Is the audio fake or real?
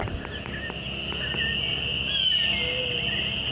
real